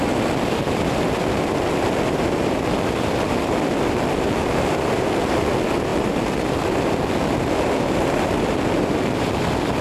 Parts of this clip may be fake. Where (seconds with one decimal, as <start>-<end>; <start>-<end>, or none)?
0.0-9.8